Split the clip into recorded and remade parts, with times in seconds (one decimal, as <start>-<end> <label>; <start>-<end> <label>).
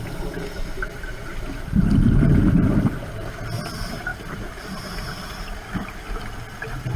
0.0-1.3 recorded; 1.3-1.9 remade; 1.9-7.0 recorded